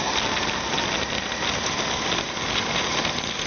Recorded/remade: recorded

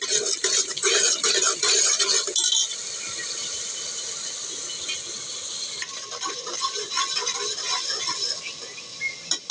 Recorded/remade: recorded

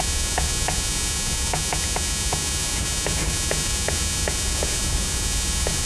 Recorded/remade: recorded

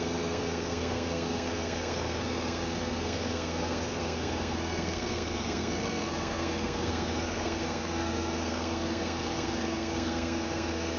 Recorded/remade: remade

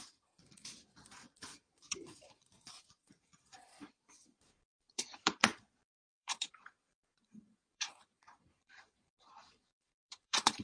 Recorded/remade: remade